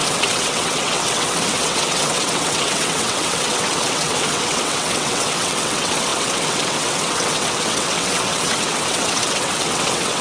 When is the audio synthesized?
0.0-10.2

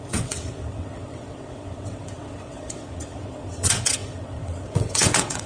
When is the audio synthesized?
0.0-5.5

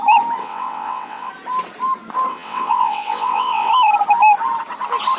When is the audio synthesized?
0.4-1.3; 2.3-3.7

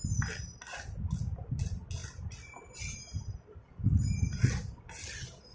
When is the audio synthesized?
none

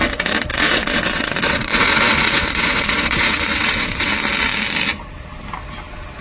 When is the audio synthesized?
0.5-4.1

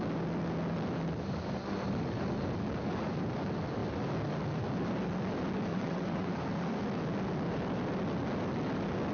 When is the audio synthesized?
5.7-6.3